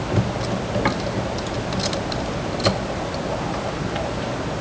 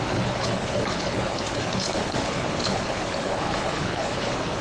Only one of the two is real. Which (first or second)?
first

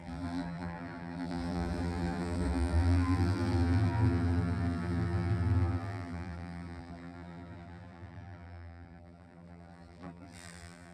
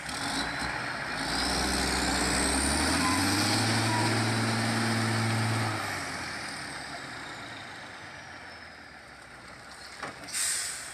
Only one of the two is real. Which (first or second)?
second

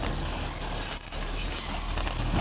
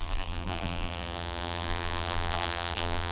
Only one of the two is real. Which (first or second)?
first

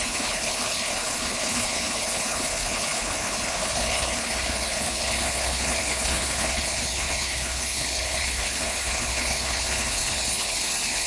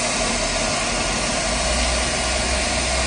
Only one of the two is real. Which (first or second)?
second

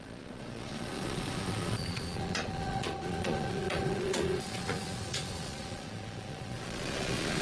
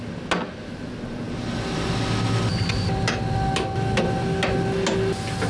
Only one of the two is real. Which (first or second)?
second